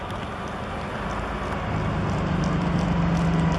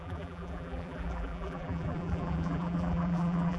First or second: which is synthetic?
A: second